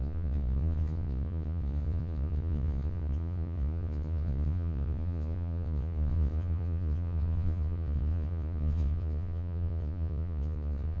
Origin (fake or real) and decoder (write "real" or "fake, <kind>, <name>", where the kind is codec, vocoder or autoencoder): fake, vocoder, Vocos